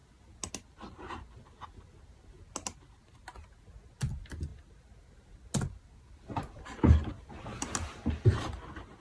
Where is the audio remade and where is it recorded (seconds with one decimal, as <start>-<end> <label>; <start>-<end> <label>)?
0.0-9.0 recorded